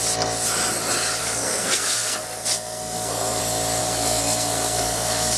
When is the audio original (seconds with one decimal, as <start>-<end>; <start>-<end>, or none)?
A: 0.0-1.2; 3.4-3.8